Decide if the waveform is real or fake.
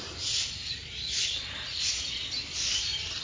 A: real